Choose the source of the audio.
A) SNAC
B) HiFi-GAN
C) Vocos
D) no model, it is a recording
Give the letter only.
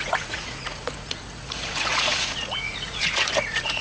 C